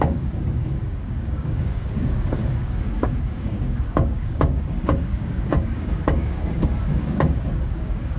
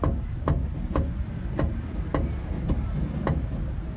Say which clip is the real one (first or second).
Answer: second